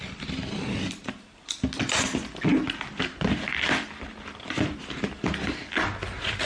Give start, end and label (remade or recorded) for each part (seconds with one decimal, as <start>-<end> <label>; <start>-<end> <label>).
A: 0.0-6.5 recorded